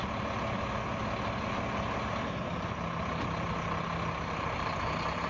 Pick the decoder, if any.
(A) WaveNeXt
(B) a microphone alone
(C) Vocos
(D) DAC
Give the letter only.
B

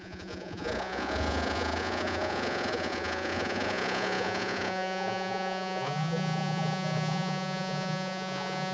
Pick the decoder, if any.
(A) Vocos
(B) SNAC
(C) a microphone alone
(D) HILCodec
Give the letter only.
A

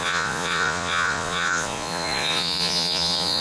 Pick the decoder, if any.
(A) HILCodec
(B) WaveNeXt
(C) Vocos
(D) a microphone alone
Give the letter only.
C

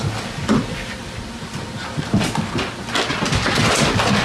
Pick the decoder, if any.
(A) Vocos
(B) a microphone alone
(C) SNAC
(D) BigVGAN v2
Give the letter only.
B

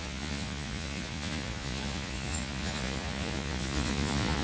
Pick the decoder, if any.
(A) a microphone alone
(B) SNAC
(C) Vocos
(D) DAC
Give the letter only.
C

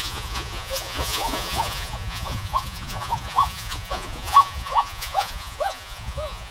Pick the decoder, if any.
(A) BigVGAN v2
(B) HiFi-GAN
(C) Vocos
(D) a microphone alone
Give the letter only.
C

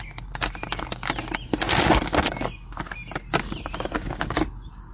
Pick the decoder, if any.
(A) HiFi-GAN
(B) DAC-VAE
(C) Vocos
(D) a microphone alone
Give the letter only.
D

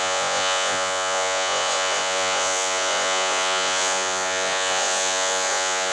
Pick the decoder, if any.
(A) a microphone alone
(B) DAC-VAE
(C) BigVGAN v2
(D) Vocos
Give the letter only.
D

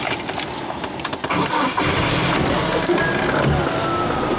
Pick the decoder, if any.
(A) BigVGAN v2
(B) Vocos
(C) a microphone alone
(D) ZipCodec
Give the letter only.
C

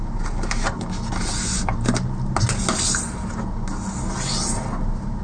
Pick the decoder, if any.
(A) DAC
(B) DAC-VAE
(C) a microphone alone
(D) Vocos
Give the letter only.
C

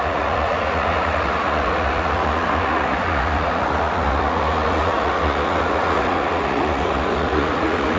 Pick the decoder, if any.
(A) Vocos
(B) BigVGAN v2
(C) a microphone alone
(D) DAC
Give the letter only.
A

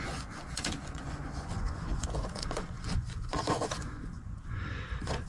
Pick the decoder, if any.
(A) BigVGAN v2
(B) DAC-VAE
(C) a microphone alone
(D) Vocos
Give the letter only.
D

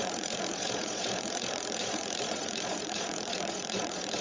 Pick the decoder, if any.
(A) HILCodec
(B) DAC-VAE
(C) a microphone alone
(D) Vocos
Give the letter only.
D